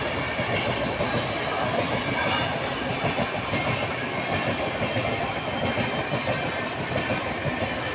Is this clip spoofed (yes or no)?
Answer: no